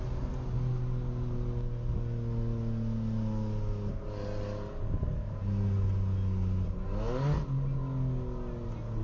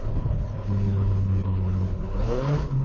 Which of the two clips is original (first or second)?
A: first